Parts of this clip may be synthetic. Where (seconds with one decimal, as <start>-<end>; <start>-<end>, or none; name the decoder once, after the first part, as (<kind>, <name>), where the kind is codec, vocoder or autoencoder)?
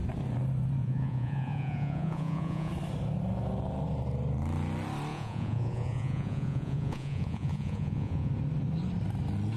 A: 0.8-2.7 (vocoder, Vocos); 5.1-8.3